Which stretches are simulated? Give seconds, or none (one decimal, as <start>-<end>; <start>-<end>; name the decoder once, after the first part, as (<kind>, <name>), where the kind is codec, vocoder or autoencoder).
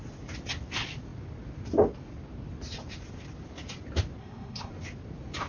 4.2-4.7 (codec, SNAC)